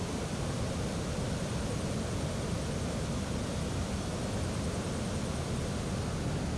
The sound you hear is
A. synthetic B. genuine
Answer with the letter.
B